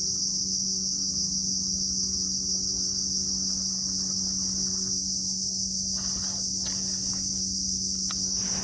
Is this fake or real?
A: real